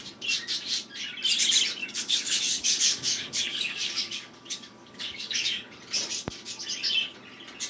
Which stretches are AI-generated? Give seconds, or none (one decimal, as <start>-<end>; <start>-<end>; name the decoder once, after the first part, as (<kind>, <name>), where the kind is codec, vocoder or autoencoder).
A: 1.8-5.8 (codec, DAC)

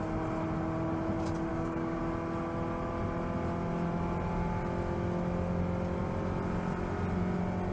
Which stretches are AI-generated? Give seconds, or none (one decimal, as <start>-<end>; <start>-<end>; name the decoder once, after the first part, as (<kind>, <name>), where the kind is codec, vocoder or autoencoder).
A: 1.5-2.0 (codec, DAC)

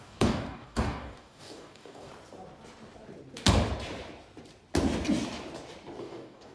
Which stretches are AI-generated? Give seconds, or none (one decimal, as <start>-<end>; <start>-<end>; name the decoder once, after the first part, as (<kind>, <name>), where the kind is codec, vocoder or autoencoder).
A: 0.0-2.1 (codec, DAC); 6.0-6.5